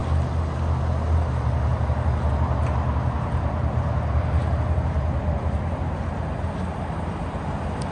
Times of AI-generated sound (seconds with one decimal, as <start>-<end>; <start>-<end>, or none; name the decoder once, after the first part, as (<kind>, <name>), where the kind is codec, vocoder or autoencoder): none